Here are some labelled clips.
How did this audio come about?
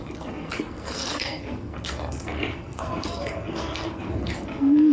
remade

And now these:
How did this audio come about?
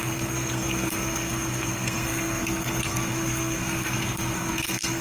remade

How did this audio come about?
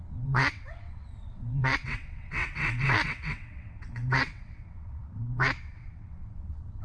remade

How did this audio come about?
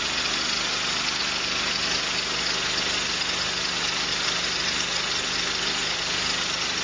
recorded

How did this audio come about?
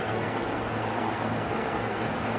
remade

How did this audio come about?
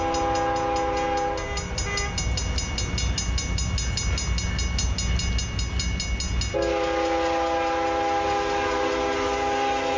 recorded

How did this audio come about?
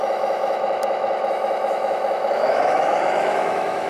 remade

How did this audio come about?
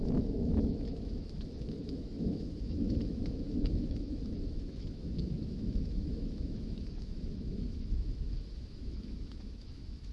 remade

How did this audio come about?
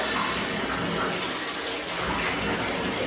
recorded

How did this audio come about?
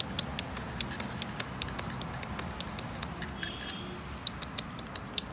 recorded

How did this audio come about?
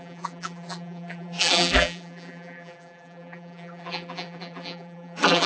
remade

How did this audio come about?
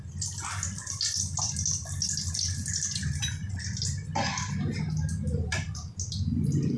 recorded